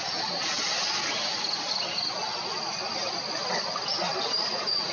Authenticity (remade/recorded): recorded